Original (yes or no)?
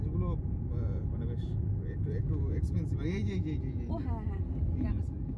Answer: yes